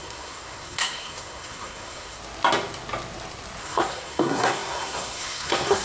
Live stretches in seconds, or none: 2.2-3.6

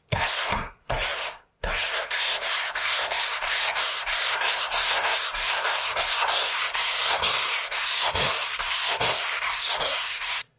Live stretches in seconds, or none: none

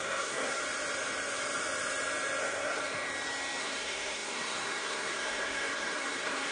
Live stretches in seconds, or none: 0.6-2.4; 2.8-3.6

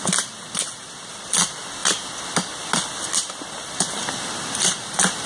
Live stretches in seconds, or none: 0.0-5.3